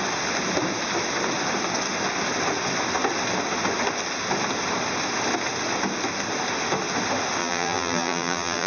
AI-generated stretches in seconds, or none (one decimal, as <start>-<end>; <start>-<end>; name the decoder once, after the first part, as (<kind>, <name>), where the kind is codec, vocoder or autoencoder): 7.4-8.7 (vocoder, BigVGAN v2)